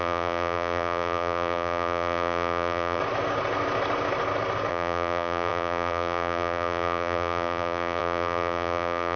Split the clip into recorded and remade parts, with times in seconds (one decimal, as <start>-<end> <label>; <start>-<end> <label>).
0.0-3.0 remade; 3.0-4.7 recorded; 4.7-9.2 remade